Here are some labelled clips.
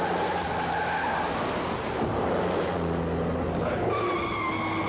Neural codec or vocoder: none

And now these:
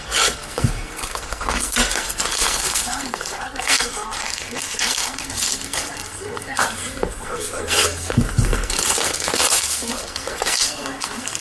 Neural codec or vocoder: codec, SNAC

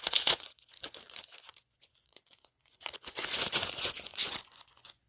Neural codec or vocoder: vocoder, Vocos